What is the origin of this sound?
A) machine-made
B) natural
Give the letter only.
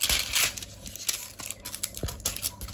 B